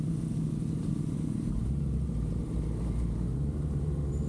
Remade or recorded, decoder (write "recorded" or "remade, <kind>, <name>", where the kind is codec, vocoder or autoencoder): remade, vocoder, BigVGAN v2